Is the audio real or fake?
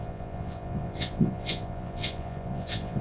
fake